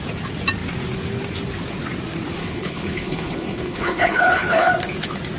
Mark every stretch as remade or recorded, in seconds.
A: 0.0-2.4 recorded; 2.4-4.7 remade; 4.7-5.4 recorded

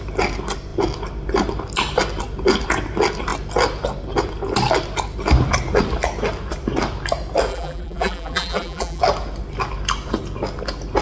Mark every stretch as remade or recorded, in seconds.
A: 0.0-7.5 recorded; 7.5-9.0 remade; 9.0-11.0 recorded